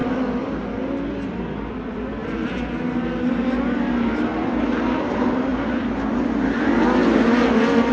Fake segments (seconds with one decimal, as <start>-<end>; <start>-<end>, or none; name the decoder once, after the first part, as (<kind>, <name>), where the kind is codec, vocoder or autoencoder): none